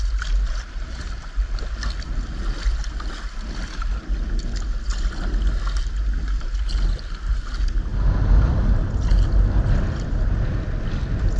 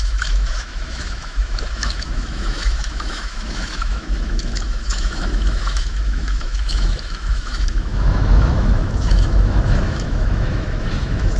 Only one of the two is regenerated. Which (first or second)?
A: second